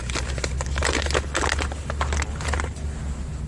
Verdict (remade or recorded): recorded